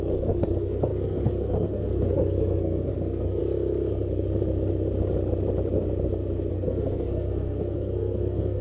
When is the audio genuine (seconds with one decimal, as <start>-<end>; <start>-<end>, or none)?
3.4-6.5